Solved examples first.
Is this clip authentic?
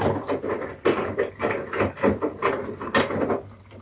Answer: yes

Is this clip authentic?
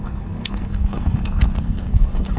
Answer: no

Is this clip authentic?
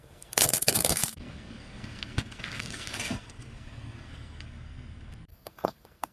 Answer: no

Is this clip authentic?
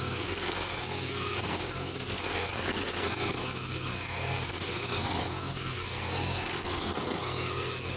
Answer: no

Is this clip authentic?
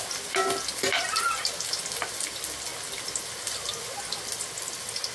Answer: yes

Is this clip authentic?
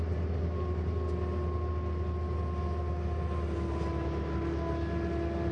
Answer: yes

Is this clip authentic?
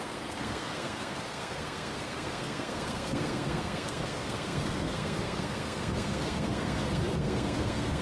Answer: no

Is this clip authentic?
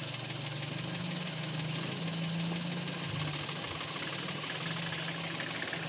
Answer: yes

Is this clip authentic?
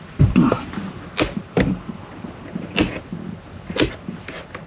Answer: yes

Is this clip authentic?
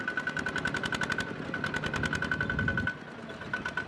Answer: yes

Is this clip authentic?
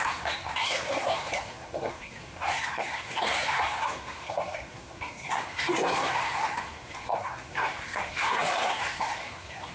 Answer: no